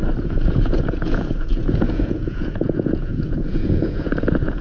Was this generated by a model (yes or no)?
yes